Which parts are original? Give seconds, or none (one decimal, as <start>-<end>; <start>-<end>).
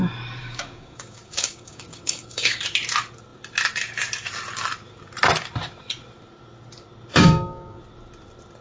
0.0-0.4; 2.6-7.1; 7.8-8.6